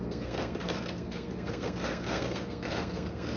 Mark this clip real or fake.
fake